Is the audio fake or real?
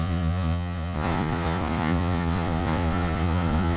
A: fake